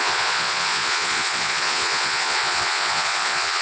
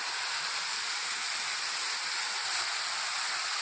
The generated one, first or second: first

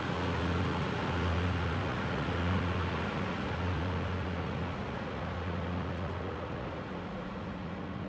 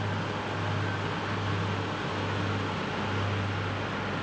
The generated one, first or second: first